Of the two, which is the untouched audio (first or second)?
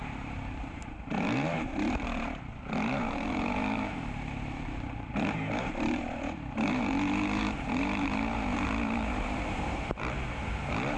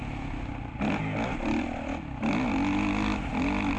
second